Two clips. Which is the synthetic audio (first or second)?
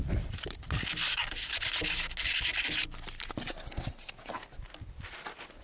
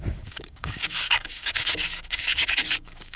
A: second